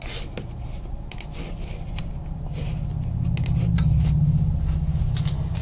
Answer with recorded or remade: recorded